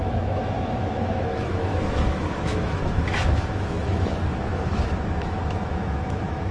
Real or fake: fake